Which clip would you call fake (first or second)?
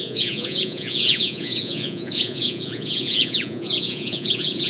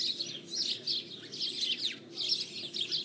first